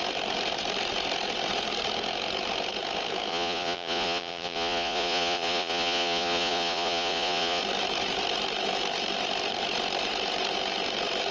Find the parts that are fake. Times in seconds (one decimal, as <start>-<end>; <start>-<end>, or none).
3.3-7.6